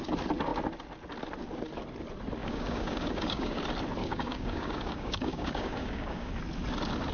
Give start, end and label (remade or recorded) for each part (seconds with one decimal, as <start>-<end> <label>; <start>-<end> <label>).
0.0-2.4 recorded; 2.4-3.6 remade; 3.6-4.0 recorded; 4.0-6.3 remade; 6.3-7.1 recorded